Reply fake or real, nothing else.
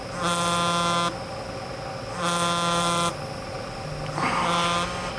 real